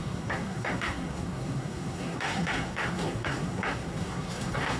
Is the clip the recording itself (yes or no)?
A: no